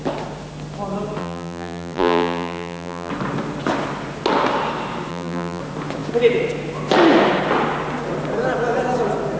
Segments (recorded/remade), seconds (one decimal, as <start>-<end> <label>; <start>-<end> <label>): 0.0-1.2 recorded; 1.2-3.1 remade; 3.1-5.1 recorded; 5.1-5.6 remade; 5.6-9.4 recorded